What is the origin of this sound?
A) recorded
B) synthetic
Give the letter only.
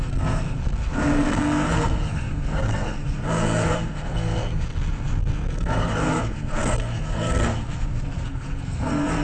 B